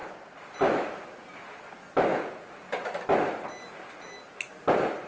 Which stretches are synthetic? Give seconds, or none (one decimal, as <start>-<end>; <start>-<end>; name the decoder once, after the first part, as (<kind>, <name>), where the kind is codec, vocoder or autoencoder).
2.1-2.8 (vocoder, Vocos)